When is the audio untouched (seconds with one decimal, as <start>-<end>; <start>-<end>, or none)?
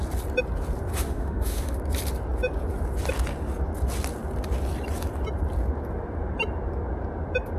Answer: 0.0-0.9; 1.8-7.6